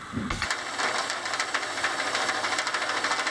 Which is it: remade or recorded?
recorded